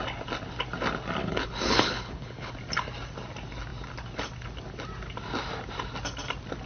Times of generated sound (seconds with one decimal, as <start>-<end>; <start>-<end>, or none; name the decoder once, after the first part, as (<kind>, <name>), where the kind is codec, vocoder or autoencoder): 1.2-2.5 (codec, HILCodec)